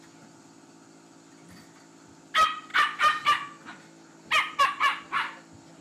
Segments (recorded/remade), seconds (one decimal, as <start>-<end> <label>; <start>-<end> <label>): 0.0-5.8 recorded